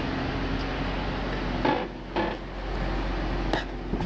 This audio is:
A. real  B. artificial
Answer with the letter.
A